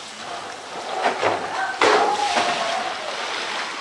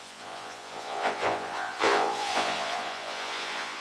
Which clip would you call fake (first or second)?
second